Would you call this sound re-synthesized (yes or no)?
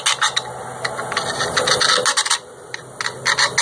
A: no